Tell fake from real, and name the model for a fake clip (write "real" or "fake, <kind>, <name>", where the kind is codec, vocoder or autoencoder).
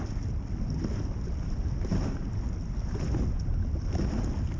real